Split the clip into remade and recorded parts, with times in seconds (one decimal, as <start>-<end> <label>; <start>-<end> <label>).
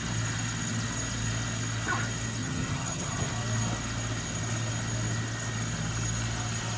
0.0-2.4 recorded; 2.4-3.3 remade; 3.3-6.8 recorded